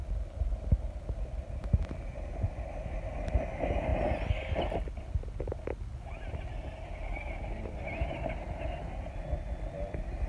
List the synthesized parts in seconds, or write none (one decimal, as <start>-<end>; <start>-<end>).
none